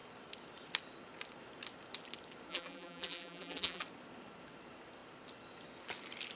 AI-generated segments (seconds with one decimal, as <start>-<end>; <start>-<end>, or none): 2.5-3.8